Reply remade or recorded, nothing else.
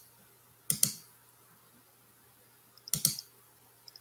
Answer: recorded